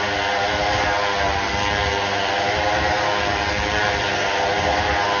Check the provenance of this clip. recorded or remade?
recorded